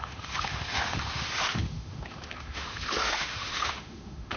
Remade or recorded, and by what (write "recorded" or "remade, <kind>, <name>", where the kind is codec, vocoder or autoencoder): remade, autoencoder, DAC-VAE